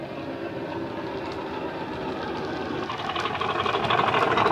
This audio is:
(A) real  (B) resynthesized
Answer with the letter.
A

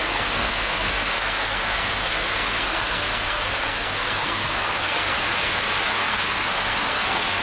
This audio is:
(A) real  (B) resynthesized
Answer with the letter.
B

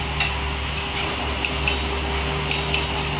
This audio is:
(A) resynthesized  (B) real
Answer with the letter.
B